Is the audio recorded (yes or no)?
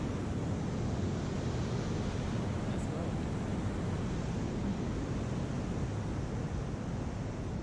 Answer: yes